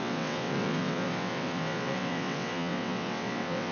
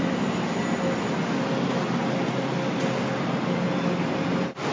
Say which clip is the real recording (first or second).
second